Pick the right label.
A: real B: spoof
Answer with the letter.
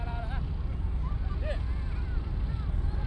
A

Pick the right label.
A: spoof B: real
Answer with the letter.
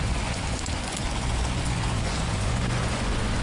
A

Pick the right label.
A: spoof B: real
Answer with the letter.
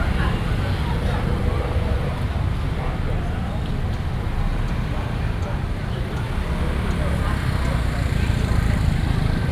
B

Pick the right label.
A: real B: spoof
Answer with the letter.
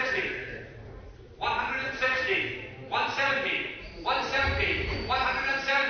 B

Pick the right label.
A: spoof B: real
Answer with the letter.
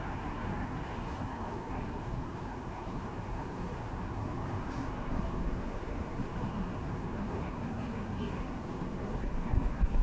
A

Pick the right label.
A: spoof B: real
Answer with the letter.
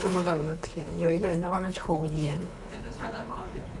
A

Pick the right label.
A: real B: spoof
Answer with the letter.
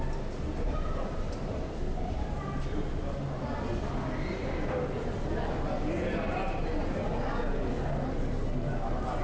A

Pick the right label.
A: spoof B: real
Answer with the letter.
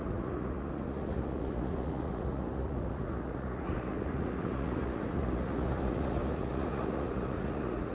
A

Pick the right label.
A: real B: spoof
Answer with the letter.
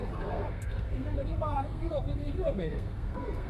B